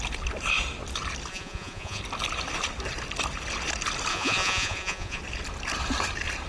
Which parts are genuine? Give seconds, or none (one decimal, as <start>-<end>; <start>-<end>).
0.0-1.3; 2.0-4.1; 5.2-6.5